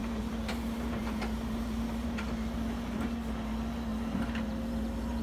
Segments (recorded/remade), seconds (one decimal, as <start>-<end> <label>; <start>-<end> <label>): 0.0-3.1 remade; 3.1-3.9 recorded; 3.9-5.2 remade

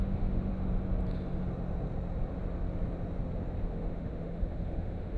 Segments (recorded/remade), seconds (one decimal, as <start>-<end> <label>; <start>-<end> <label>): 0.0-0.5 remade; 0.5-3.6 recorded; 3.6-5.2 remade

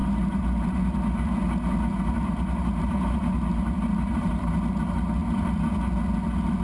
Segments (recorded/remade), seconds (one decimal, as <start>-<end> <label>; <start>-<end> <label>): 0.0-0.8 remade; 0.8-1.9 recorded; 1.9-4.5 remade; 4.5-6.6 recorded

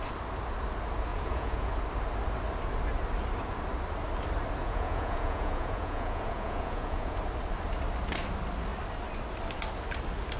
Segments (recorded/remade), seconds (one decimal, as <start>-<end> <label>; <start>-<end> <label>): 0.0-1.1 recorded; 1.1-1.7 remade; 1.7-4.6 recorded; 4.6-7.2 remade; 7.2-10.4 recorded